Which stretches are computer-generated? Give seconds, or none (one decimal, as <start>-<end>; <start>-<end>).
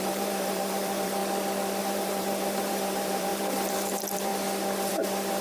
0.0-1.2; 1.8-4.3; 4.9-5.4